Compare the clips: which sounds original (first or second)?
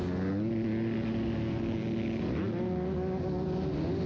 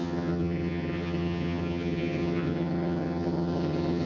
first